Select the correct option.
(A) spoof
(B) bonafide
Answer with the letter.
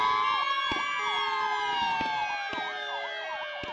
B